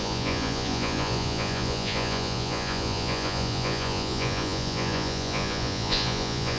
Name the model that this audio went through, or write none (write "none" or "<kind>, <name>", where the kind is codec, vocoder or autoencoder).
vocoder, Vocos